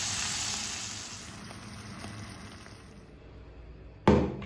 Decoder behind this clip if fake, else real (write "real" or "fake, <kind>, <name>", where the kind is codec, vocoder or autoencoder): real